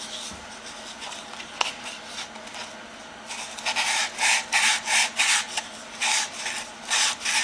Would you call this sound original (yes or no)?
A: yes